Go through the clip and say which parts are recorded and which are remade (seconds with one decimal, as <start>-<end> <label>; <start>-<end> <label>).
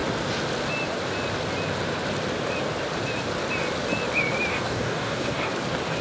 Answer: 0.0-4.5 recorded; 4.5-5.5 remade; 5.5-6.0 recorded